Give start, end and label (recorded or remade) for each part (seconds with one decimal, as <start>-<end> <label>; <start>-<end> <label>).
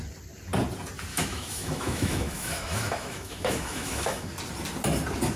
0.0-1.1 recorded; 1.1-4.3 remade; 4.3-5.4 recorded